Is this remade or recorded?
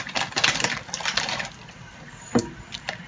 recorded